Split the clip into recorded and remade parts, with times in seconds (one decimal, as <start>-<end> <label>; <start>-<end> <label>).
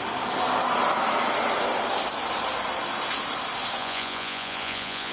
0.0-3.8 recorded; 3.8-5.1 remade